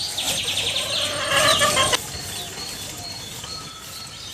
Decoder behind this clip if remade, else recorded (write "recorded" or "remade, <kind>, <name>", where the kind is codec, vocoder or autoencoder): recorded